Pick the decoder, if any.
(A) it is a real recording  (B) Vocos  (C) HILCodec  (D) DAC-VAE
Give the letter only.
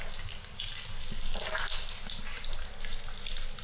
A